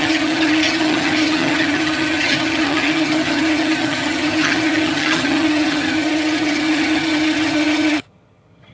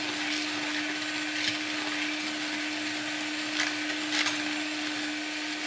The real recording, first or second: second